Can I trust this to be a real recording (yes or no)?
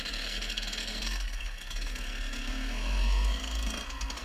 no